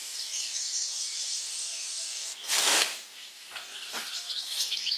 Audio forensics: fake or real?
fake